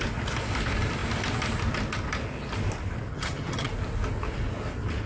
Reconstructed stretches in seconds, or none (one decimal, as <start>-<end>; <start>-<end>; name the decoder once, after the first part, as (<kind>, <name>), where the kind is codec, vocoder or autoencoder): 3.1-3.7 (vocoder, HiFi-GAN)